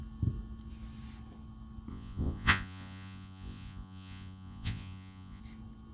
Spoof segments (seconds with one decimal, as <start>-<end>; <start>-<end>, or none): 1.9-5.4